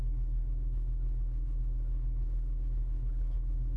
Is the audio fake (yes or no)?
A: yes